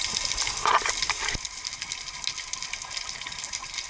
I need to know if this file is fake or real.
real